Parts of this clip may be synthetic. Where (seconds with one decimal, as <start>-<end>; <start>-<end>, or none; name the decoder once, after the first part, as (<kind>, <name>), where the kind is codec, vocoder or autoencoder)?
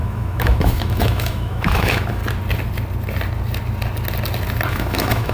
0.0-2.2 (autoencoder, DAC-VAE); 4.7-5.3